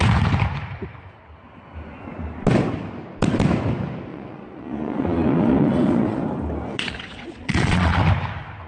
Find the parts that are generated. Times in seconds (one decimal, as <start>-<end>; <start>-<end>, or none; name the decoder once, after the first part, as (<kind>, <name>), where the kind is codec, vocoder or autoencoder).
4.1-6.2 (vocoder, Vocos); 6.7-8.0